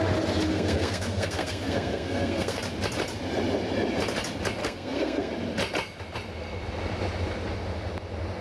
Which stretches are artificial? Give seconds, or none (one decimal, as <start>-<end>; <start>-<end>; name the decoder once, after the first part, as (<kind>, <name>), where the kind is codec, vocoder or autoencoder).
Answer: 0.5-2.6 (codec, SNAC); 4.6-5.3